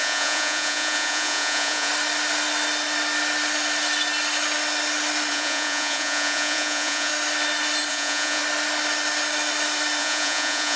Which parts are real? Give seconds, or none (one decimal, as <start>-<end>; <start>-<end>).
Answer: 1.9-5.3; 7.1-7.9; 8.4-10.0